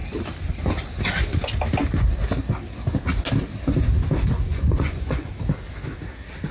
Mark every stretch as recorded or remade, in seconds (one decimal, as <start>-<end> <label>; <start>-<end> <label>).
0.0-4.5 recorded; 4.5-5.3 remade; 5.3-6.5 recorded